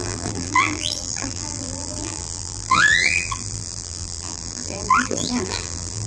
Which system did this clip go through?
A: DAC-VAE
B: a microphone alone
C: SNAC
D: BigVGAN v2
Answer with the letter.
D